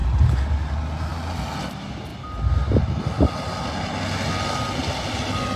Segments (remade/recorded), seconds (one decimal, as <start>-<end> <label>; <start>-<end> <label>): 0.0-5.6 recorded

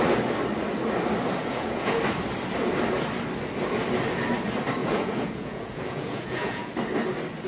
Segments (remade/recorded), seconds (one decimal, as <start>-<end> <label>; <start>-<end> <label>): 0.0-1.4 recorded; 1.4-2.0 remade; 2.0-4.8 recorded; 4.8-6.7 remade; 6.7-7.5 recorded

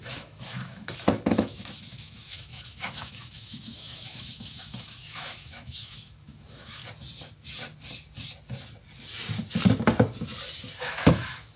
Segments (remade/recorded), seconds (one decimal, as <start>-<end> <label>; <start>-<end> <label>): 0.0-6.8 remade; 6.8-10.8 recorded; 10.8-11.6 remade

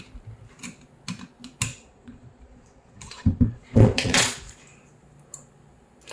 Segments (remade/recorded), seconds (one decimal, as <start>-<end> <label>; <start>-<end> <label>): 0.0-1.7 recorded; 1.7-4.5 remade; 4.5-6.1 recorded

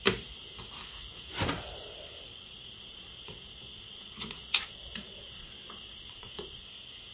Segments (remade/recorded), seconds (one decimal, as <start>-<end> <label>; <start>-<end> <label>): 0.0-2.3 recorded; 2.3-6.6 remade; 6.6-7.1 recorded

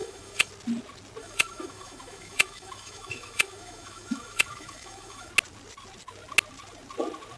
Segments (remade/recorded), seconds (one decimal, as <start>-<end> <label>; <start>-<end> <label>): 0.0-0.5 remade; 0.5-1.2 recorded; 1.2-5.3 remade; 5.3-7.4 recorded

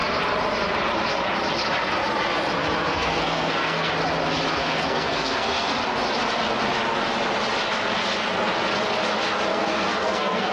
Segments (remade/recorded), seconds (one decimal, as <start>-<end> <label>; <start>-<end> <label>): 0.0-2.9 recorded; 2.9-3.9 remade; 3.9-4.6 recorded; 4.6-5.7 remade; 5.7-9.5 recorded; 9.5-10.5 remade

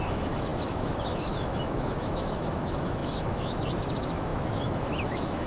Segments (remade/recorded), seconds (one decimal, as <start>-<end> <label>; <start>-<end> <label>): 0.0-5.5 remade